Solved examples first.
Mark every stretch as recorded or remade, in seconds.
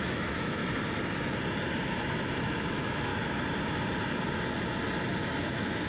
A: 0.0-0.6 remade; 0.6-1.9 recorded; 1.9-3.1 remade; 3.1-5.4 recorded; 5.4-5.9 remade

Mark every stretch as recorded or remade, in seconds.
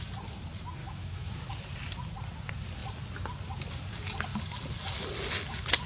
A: 0.0-0.8 recorded; 0.8-1.5 remade; 1.5-5.9 recorded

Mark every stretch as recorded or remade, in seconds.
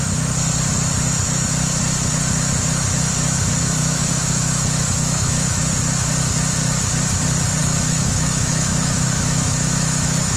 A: 0.0-3.8 recorded; 3.8-5.7 remade; 5.7-7.6 recorded; 7.6-10.4 remade